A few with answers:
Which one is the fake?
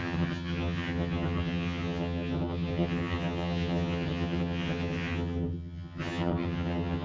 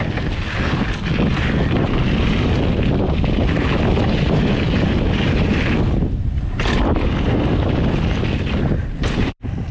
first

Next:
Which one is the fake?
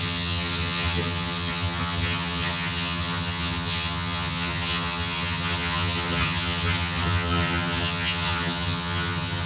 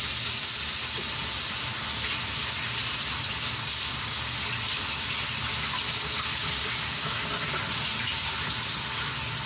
first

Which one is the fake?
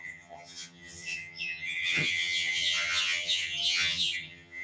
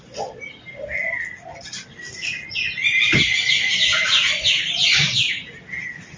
first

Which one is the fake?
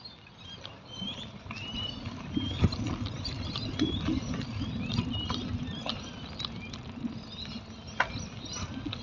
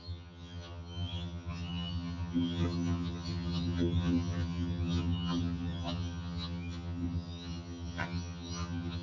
second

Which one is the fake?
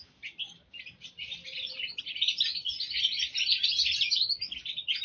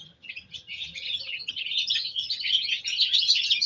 second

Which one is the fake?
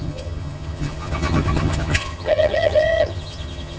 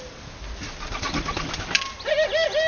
first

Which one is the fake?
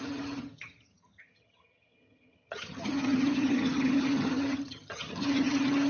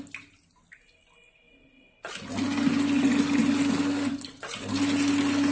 first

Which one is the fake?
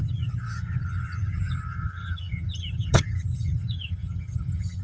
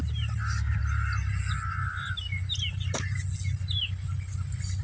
first